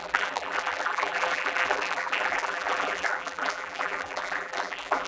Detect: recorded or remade remade